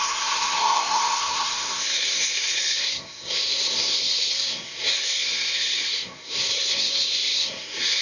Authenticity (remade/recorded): remade